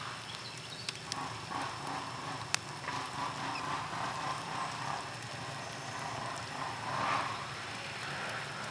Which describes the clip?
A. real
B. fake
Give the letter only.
A